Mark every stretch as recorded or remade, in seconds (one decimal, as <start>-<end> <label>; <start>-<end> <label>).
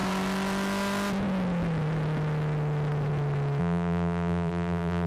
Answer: 0.0-3.6 recorded; 3.6-5.1 remade